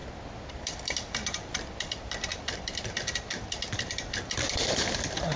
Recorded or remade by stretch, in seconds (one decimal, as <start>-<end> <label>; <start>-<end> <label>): 0.0-5.4 remade